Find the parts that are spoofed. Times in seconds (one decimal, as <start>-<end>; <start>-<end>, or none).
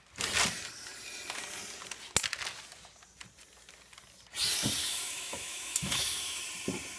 4.8-6.4